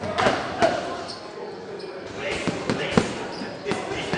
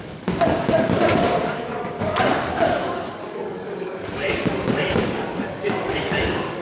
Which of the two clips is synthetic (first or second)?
second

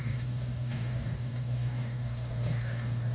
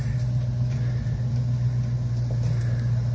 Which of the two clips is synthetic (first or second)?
first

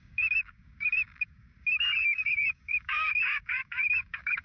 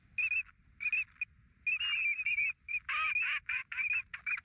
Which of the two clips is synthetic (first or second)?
first